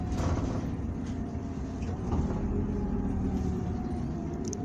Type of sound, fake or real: real